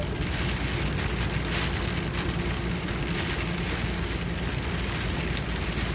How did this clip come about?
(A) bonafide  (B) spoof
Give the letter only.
A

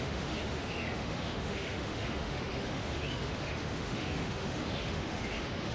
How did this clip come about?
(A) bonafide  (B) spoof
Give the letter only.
B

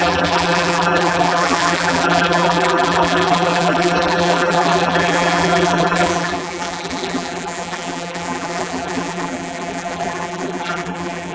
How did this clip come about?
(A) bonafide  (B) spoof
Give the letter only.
B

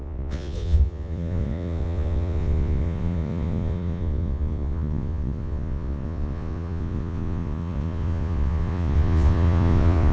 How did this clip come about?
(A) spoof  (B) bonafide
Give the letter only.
A